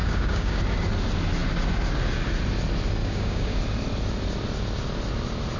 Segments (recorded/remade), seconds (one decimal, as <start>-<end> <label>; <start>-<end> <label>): 0.0-0.6 remade; 0.6-3.0 recorded; 3.0-3.6 remade; 3.6-5.6 recorded

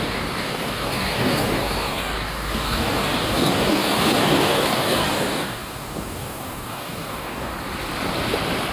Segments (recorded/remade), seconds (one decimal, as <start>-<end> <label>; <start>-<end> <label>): 0.0-7.5 remade; 7.5-8.7 recorded

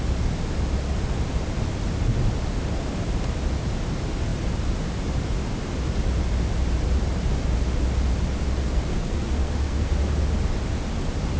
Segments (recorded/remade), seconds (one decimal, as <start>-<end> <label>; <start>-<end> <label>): 0.0-8.6 recorded; 8.6-9.9 remade; 9.9-11.4 recorded

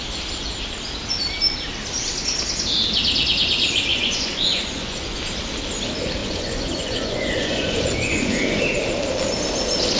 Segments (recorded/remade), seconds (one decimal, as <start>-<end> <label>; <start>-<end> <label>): 0.0-3.9 recorded; 3.9-5.2 remade; 5.2-6.2 recorded; 6.2-8.6 remade; 8.6-10.0 recorded